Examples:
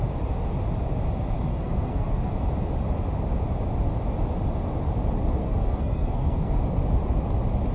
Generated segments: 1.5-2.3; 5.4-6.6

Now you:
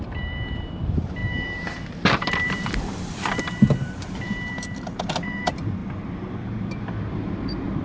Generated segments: 0.0-5.8; 6.4-7.8

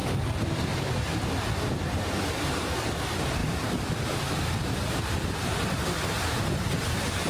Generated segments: none

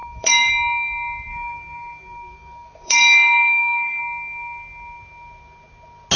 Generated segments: 0.0-0.5; 1.3-4.0

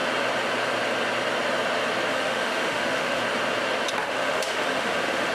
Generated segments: 2.1-3.2; 4.0-5.3

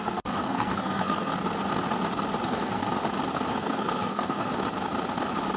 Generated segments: 0.0-1.3; 2.4-2.9; 3.5-4.5

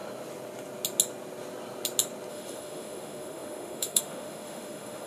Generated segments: 2.3-5.1

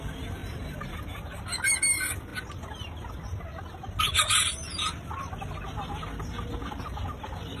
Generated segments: none